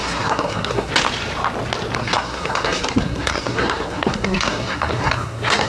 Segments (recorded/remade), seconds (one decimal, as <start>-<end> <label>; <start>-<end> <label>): 0.0-0.9 remade; 0.9-2.0 recorded; 2.0-5.7 remade